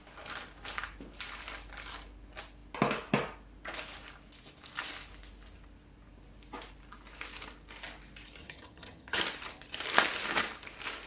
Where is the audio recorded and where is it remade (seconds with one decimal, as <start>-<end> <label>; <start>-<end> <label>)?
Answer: 0.0-8.4 recorded; 8.4-9.2 remade; 9.2-11.1 recorded